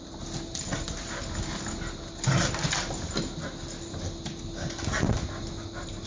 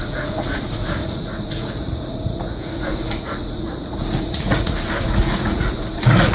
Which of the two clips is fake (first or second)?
second